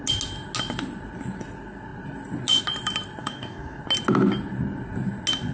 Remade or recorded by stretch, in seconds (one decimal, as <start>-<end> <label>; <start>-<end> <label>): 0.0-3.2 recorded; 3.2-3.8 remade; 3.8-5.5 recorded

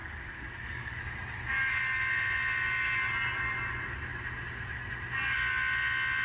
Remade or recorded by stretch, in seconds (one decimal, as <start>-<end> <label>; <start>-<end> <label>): 0.0-1.0 remade; 1.0-6.2 recorded

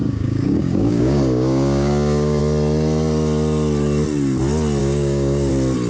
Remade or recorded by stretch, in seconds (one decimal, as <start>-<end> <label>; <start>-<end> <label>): 0.0-2.4 remade; 2.4-4.8 recorded; 4.8-5.5 remade; 5.5-5.9 recorded